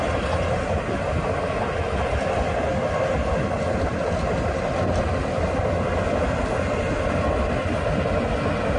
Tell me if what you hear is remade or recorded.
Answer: recorded